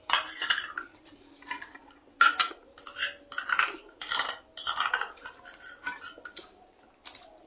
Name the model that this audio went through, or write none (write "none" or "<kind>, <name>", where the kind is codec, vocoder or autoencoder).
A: none